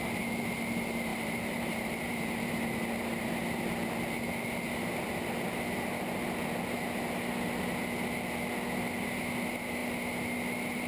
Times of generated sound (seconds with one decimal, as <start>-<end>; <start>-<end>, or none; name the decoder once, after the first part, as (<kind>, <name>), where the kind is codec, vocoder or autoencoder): 1.1-2.5 (vocoder, BigVGAN v2)